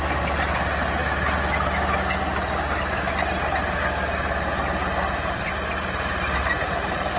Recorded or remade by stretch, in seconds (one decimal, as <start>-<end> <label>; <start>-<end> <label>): 0.0-7.2 recorded